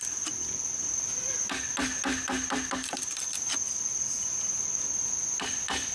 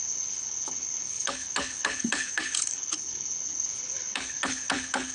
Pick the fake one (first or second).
second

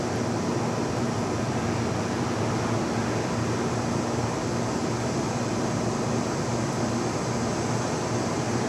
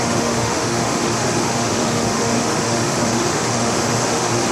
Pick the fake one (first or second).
second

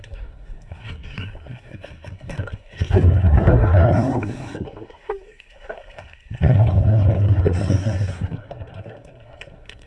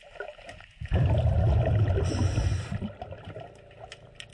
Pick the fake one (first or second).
first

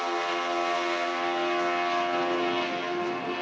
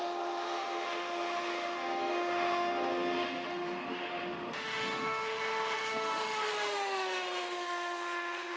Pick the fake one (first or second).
second